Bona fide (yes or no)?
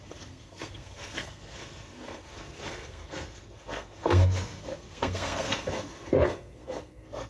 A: no